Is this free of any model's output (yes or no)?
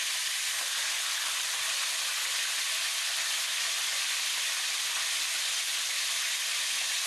yes